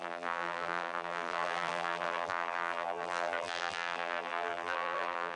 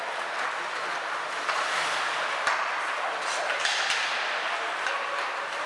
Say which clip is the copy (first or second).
first